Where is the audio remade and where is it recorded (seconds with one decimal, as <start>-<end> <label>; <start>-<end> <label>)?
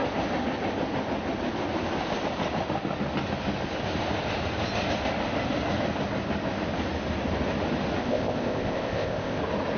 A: 0.0-8.0 recorded; 8.0-9.4 remade; 9.4-9.8 recorded